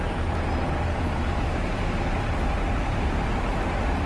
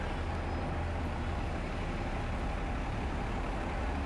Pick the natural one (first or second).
second